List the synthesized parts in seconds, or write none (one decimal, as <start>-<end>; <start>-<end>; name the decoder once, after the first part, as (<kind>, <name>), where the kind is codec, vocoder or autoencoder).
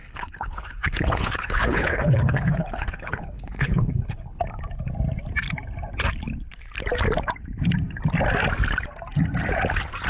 0.0-4.4 (codec, HILCodec)